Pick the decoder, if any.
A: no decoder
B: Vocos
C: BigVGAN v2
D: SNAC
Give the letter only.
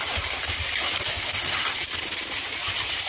A